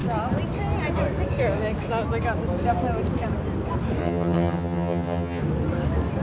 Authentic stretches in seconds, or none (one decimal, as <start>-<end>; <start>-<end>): 0.0-4.0; 5.4-6.2